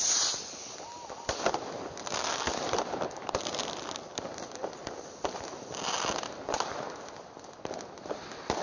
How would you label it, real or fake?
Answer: real